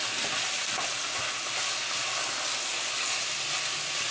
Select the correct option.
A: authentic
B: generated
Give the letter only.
A